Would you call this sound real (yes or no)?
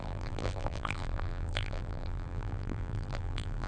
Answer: no